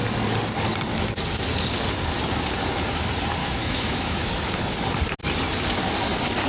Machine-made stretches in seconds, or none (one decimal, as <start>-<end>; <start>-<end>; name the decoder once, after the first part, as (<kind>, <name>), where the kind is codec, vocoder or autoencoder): 3.4-4.4 (autoencoder, DAC-VAE)